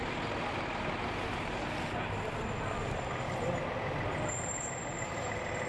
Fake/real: real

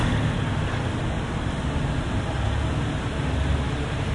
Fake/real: real